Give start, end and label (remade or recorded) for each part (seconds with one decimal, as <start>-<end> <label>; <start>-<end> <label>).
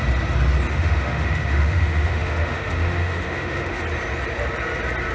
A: 0.0-0.7 recorded; 0.7-3.8 remade; 3.8-5.1 recorded